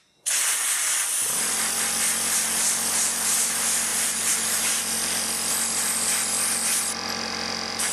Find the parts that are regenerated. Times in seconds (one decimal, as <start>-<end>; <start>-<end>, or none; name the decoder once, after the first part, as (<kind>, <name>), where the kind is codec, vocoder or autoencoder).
3.9-4.8 (vocoder, BigVGAN v2)